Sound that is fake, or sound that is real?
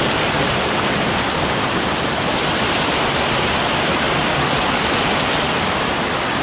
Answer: real